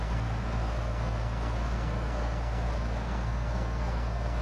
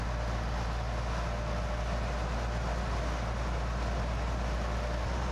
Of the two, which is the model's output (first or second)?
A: first